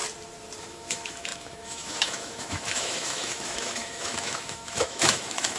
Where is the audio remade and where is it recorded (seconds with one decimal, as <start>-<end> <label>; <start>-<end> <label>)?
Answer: 0.0-0.6 recorded; 0.6-5.6 remade